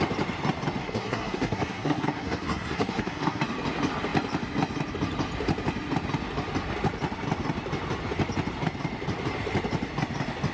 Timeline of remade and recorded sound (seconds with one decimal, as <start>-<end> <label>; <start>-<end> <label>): 0.0-0.8 recorded; 0.8-3.4 remade; 3.4-10.5 recorded